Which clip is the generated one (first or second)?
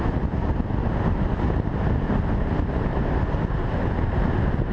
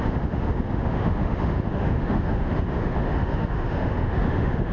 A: second